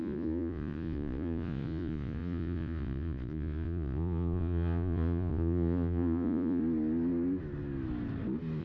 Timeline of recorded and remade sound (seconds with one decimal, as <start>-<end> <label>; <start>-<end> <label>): 0.0-6.6 remade; 6.6-8.6 recorded